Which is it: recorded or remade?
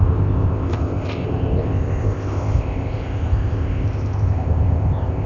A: remade